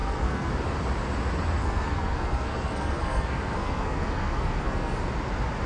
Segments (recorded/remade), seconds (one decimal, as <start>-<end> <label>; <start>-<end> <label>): 0.0-0.5 remade; 0.5-1.6 recorded; 1.6-5.0 remade; 5.0-5.7 recorded